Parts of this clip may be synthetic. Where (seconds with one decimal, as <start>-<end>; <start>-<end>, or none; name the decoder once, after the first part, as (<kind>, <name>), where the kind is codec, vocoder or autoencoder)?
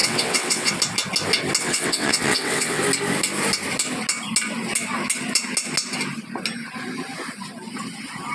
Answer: 0.0-0.7 (vocoder, WaveNeXt); 1.6-2.8